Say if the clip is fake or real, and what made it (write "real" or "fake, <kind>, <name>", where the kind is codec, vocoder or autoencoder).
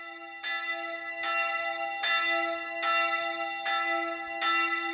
real